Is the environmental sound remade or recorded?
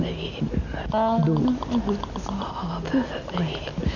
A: recorded